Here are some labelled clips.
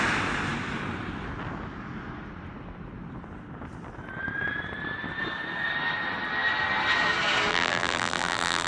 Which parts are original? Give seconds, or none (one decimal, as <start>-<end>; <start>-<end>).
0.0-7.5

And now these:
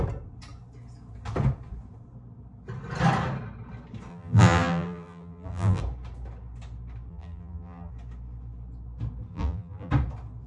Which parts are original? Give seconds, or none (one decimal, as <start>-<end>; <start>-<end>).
0.0-4.1; 5.8-7.1; 7.9-9.3; 9.9-10.5

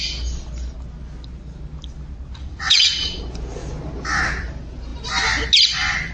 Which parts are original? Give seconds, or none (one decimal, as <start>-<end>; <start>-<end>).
0.0-2.4; 3.2-6.1

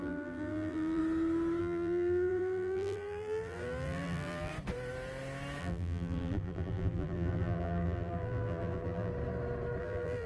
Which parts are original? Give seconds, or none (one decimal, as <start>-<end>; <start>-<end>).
1.0-1.6; 4.5-5.6; 9.1-9.8

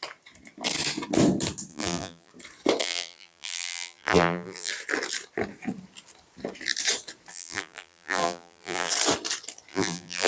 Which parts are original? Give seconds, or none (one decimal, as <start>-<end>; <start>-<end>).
0.0-1.7; 2.3-2.8; 4.7-7.3; 8.9-9.7

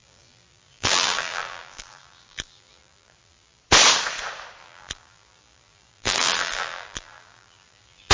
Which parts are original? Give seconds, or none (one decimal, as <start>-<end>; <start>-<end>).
3.6-4.6